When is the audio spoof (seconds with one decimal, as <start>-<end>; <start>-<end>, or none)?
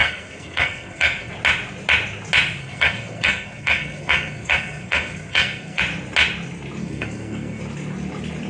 0.0-1.3; 2.6-5.8; 6.8-7.6